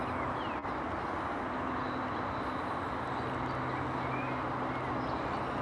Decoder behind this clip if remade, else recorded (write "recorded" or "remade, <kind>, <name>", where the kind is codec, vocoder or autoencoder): recorded